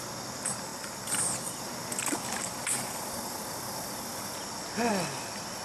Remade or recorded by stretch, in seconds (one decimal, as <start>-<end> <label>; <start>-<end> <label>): 0.0-0.7 recorded; 0.7-1.6 remade; 1.6-5.6 recorded